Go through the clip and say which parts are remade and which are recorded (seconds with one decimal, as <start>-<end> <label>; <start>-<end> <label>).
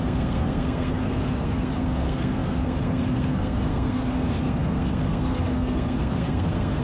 0.0-6.8 remade